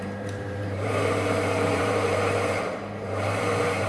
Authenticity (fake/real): fake